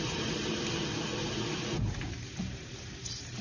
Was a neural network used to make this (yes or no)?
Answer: yes